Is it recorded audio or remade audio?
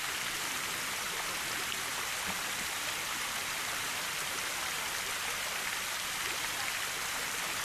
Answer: remade